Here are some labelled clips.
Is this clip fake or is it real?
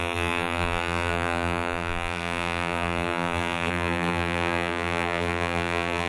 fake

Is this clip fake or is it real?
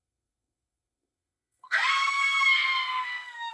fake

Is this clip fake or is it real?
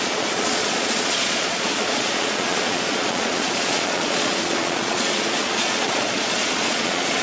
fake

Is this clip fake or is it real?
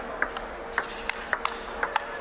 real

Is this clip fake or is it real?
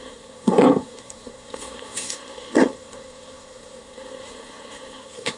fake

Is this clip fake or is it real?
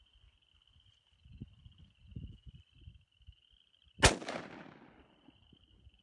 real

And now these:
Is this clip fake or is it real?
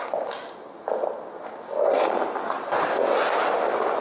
real